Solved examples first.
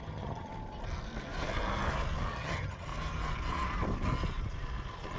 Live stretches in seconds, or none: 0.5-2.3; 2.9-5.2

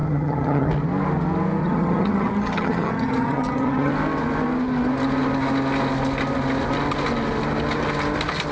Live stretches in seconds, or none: 0.7-1.6; 3.9-8.5